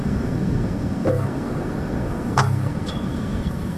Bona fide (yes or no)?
no